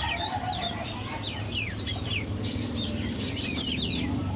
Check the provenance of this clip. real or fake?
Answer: fake